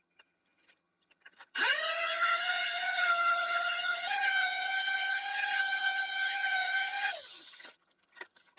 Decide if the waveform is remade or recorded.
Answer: remade